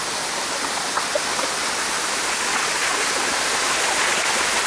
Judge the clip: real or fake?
real